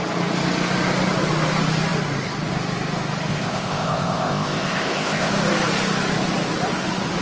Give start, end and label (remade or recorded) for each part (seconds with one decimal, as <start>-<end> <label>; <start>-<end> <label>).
0.0-3.3 recorded; 3.3-5.3 remade; 5.3-7.2 recorded